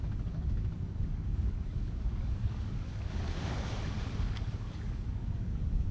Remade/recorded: remade